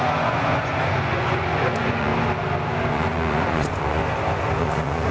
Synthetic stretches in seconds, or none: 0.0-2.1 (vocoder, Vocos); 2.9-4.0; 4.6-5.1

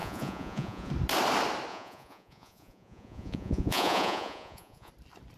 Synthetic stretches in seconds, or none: 0.0-0.9 (vocoder, Vocos); 1.7-4.9

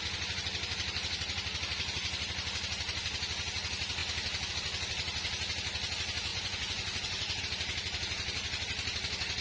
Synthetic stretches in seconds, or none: 6.3-7.4 (vocoder, Vocos)

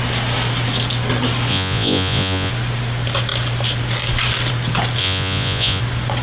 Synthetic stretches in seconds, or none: 1.5-2.5 (vocoder, Vocos); 5.0-5.8

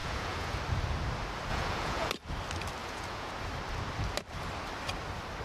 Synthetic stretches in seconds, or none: 0.0-0.6 (vocoder, Vocos); 1.5-2.1; 2.8-3.3

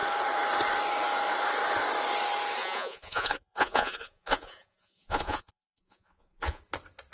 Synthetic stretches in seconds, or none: 2.6-6.6 (vocoder, Vocos)

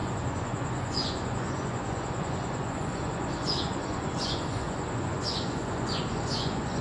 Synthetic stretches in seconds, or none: 0.0-6.8 (vocoder, Vocos)